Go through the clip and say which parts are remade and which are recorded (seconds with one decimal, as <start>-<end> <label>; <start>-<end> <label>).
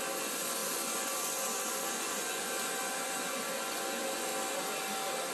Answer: 0.0-4.3 remade; 4.3-5.3 recorded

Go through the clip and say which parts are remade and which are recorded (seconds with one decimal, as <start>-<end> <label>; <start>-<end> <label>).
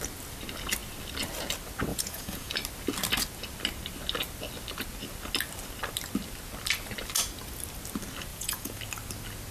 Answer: 0.0-1.9 recorded; 1.9-2.5 remade; 2.5-8.3 recorded; 8.3-8.8 remade; 8.8-9.5 recorded